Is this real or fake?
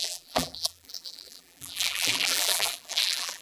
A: fake